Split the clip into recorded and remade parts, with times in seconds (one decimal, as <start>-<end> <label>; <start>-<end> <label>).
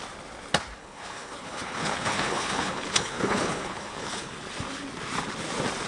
0.0-0.8 recorded; 0.8-4.3 remade; 4.3-5.9 recorded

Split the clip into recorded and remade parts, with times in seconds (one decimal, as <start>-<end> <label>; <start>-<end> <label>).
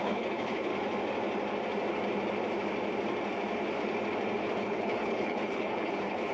0.0-0.7 remade; 0.7-4.4 recorded; 4.4-6.3 remade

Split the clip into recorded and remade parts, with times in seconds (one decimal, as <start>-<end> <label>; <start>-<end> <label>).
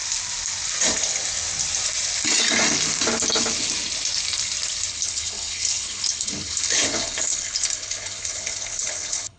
0.0-4.9 recorded; 4.9-9.4 remade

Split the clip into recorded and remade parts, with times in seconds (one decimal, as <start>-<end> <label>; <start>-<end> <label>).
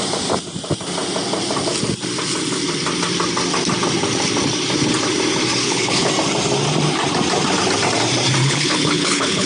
0.0-5.6 recorded; 5.6-6.1 remade; 6.1-8.4 recorded; 8.4-9.5 remade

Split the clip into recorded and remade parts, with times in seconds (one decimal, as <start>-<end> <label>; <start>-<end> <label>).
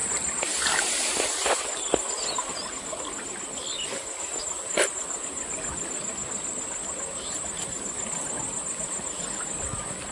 0.0-10.1 recorded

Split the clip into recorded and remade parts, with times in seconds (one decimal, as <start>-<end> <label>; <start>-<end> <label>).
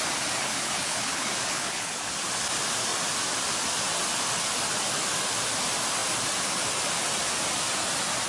0.0-0.4 recorded; 0.4-2.1 remade; 2.1-8.3 recorded